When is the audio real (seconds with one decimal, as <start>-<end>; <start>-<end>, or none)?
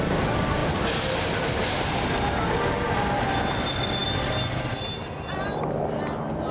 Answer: 0.0-6.5